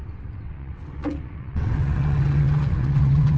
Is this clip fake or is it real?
fake